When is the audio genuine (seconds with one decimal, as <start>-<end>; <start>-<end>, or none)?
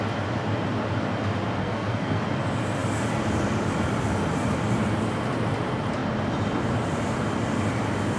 0.0-1.6; 2.2-8.2